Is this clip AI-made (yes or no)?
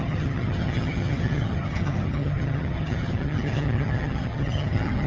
yes